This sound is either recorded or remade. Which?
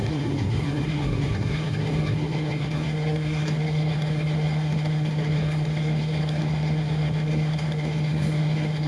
remade